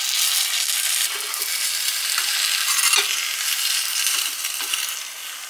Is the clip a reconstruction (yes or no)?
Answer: no